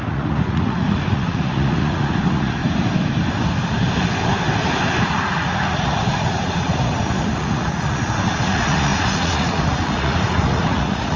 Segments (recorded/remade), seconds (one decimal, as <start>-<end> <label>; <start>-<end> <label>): 0.0-2.6 remade; 2.6-5.0 recorded; 5.0-11.2 remade